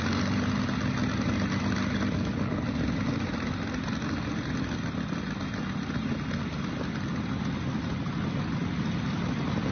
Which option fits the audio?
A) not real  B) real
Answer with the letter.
B